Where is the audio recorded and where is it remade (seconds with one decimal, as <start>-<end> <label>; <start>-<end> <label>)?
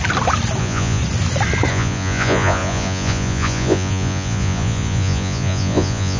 0.0-0.6 recorded; 0.6-1.0 remade; 1.0-1.7 recorded; 1.7-6.2 remade